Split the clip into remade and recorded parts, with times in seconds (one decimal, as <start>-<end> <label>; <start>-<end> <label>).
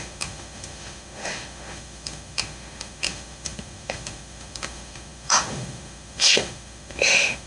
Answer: 0.0-7.5 remade